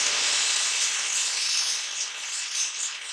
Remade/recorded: recorded